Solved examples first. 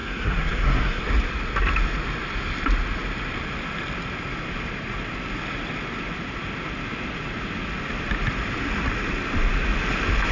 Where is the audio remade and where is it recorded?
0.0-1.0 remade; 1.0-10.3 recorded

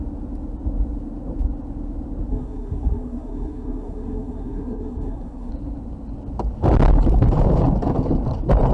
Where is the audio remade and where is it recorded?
0.0-2.3 recorded; 2.3-5.5 remade; 5.5-8.7 recorded